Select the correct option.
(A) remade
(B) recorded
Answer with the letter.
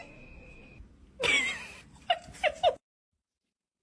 A